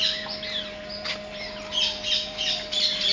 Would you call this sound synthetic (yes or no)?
no